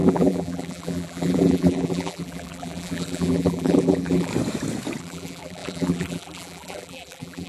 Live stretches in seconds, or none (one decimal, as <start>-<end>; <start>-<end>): 4.3-5.0